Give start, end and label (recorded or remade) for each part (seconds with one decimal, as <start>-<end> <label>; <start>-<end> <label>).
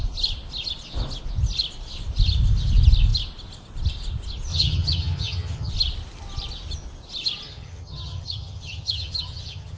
0.0-4.5 recorded; 4.5-5.7 remade; 5.7-7.5 recorded; 7.5-9.8 remade